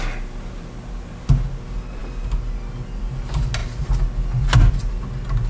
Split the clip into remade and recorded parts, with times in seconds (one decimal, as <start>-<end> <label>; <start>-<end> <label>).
0.0-5.5 recorded